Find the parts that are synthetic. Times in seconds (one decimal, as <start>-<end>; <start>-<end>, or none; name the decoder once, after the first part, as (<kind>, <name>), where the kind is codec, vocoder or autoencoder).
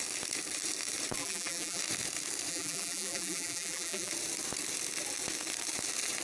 1.2-1.8 (vocoder, BigVGAN v2); 2.5-4.1